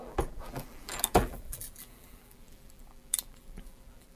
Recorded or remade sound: remade